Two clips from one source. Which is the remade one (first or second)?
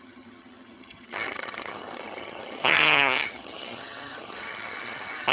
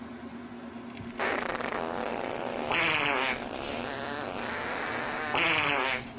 first